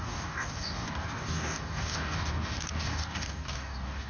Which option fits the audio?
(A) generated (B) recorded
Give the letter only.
A